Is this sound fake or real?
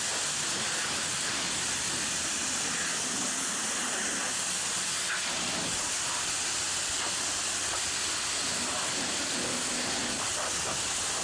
real